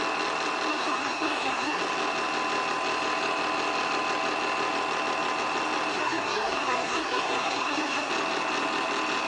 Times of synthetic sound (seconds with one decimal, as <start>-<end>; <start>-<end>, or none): 0.7-1.8; 5.9-8.1